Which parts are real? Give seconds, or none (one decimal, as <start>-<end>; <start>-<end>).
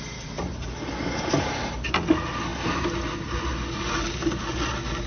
0.0-5.1